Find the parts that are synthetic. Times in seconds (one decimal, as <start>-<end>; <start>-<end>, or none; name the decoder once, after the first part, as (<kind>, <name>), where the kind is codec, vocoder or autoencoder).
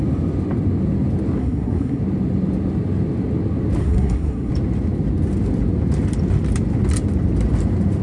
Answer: 1.4-2.0 (codec, SNAC); 3.8-4.5